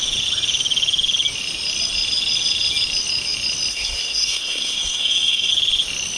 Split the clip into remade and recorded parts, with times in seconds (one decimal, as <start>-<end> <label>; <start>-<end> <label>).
0.0-3.7 recorded; 3.7-5.5 remade; 5.5-6.2 recorded